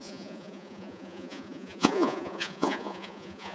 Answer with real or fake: fake